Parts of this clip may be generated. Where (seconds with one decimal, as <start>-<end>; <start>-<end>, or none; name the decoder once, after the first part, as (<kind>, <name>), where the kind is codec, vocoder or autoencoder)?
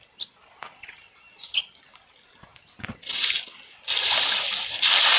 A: none